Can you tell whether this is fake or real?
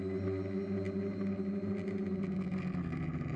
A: real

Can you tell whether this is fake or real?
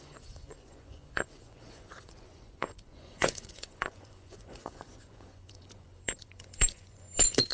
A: fake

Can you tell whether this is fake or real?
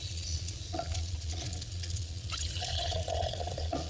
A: fake